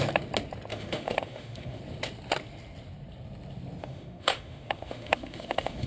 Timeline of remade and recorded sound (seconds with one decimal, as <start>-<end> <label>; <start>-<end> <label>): 0.0-0.7 recorded; 0.7-1.8 remade; 1.8-3.8 recorded; 3.8-5.9 remade